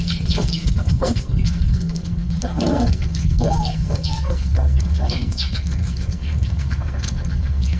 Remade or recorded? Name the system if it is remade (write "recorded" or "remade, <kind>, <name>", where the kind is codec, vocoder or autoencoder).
remade, codec, SNAC